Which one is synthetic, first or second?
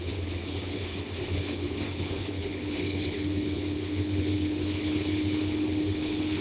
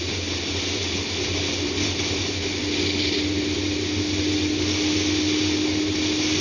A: first